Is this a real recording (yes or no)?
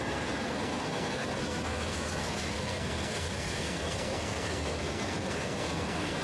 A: no